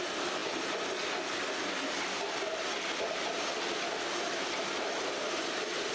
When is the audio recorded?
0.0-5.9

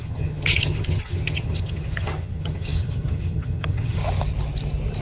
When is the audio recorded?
4.0-5.0

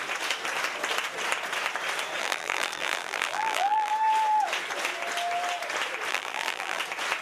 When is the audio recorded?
0.0-2.2; 3.9-6.1; 6.8-7.2